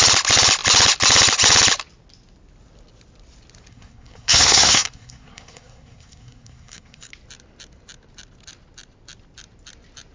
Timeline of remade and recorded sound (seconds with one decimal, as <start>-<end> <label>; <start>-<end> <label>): 0.0-3.7 recorded; 3.7-7.1 remade; 7.1-10.1 recorded